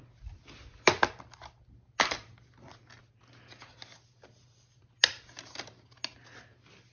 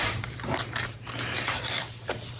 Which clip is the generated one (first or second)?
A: second